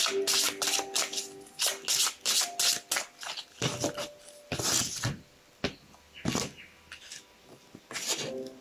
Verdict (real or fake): real